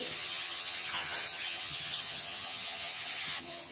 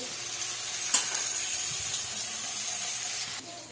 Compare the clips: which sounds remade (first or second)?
first